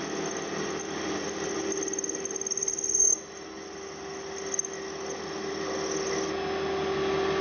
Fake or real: real